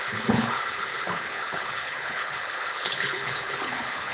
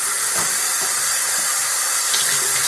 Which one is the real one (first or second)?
second